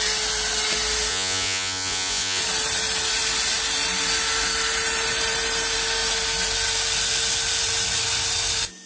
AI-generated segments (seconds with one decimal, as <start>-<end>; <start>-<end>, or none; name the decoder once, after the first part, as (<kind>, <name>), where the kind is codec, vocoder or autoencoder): 1.1-2.4 (vocoder, Vocos)